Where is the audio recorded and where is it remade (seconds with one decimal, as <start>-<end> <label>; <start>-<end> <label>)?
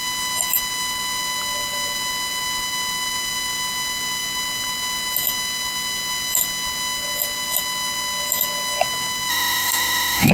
0.0-9.3 recorded; 9.3-10.3 remade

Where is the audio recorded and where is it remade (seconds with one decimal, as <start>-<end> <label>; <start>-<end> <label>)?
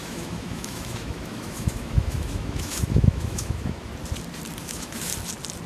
0.0-3.9 remade; 3.9-4.6 recorded; 4.6-5.1 remade; 5.1-5.7 recorded